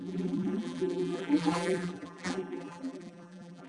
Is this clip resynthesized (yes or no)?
yes